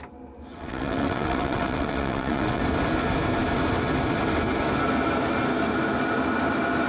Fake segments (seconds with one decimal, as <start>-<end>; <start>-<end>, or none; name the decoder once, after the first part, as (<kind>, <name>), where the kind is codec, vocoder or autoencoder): 0.5-2.6 (vocoder, WaveNeXt)

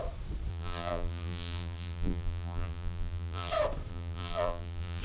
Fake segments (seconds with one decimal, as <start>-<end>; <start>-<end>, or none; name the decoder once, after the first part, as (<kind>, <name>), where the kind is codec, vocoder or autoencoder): 0.5-3.5 (vocoder, BigVGAN v2); 3.9-5.0

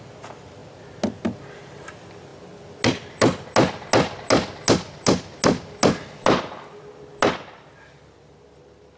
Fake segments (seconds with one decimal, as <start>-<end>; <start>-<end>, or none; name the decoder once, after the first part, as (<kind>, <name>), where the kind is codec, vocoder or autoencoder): none

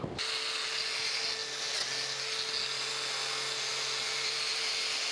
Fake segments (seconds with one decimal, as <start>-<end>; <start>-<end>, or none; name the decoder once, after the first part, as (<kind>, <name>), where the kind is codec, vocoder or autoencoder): none

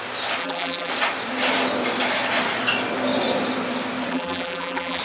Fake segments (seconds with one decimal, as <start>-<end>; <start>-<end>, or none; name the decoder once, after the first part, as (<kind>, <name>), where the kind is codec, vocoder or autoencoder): 0.4-0.9 (vocoder, BigVGAN v2); 4.1-5.0

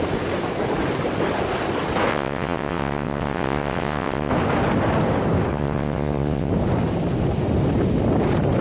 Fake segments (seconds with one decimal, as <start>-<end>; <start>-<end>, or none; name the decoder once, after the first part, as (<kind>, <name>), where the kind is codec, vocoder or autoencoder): 2.1-4.3 (vocoder, WaveNeXt); 5.5-6.5